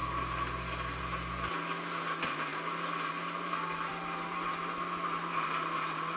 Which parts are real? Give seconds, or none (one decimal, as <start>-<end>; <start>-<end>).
0.0-6.2